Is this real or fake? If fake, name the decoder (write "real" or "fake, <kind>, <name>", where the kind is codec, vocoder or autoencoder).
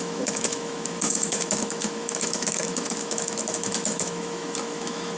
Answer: fake, autoencoder, DAC-VAE